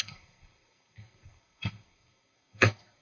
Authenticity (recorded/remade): remade